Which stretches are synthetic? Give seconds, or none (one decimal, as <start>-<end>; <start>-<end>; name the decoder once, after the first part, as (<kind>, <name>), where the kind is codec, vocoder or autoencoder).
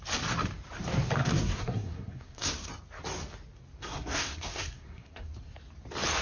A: 1.2-2.7 (codec, SNAC); 3.8-5.3